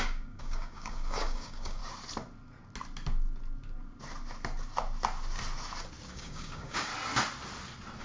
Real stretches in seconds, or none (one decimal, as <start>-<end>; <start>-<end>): 1.8-6.1; 6.9-8.0